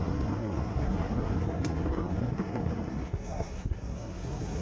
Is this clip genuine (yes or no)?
no